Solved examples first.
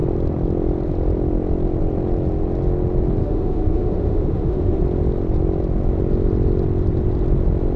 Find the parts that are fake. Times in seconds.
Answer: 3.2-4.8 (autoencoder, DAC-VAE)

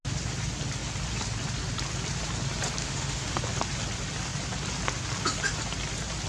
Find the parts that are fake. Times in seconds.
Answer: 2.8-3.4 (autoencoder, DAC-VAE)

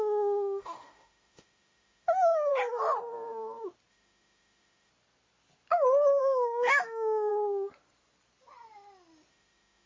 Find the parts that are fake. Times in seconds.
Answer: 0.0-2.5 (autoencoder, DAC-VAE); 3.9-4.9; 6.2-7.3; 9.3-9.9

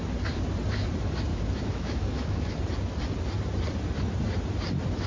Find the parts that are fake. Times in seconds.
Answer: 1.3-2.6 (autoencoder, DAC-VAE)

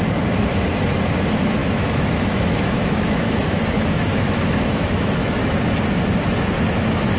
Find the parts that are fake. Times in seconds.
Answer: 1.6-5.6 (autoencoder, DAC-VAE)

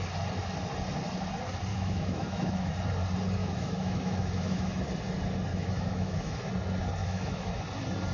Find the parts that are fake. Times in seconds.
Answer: 1.7-2.7 (autoencoder, DAC-VAE); 3.4-4.8; 5.5-6.5; 7.0-7.6